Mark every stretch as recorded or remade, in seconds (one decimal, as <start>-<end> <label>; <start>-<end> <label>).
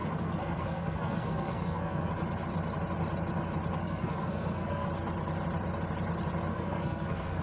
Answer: 0.0-2.1 remade; 2.1-3.8 recorded; 3.8-4.9 remade; 4.9-6.5 recorded; 6.5-7.4 remade